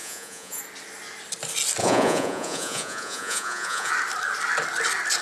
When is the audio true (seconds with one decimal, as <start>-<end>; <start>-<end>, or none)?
0.6-1.8; 3.9-5.2